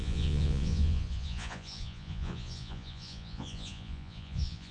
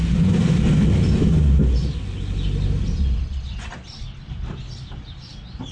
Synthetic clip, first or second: first